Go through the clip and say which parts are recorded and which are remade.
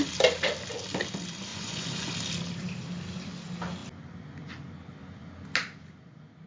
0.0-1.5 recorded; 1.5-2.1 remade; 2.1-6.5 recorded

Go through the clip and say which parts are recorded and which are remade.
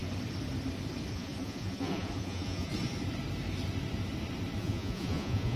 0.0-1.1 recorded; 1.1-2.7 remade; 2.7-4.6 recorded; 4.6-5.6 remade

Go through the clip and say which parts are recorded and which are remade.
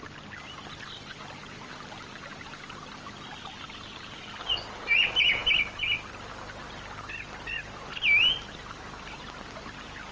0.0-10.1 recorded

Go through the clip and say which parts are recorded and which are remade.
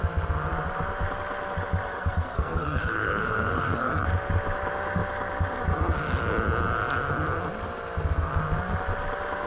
0.0-1.8 recorded; 1.8-3.9 remade; 3.9-9.5 recorded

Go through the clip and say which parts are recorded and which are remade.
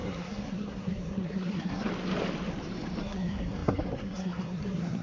0.0-1.9 remade; 1.9-3.0 recorded; 3.0-5.0 remade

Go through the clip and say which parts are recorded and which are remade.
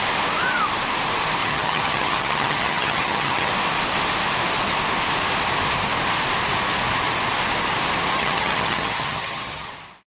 0.0-1.4 recorded; 1.4-3.5 remade; 3.5-8.1 recorded; 8.1-9.7 remade; 9.7-10.2 recorded